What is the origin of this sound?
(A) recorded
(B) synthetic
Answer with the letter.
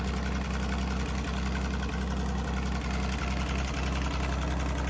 A